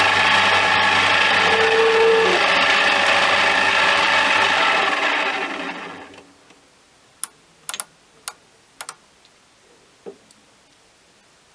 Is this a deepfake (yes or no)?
no